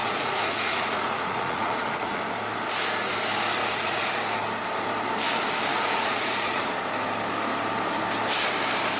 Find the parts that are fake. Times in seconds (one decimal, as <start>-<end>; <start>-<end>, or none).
0.0-2.2; 3.6-4.1; 5.7-6.7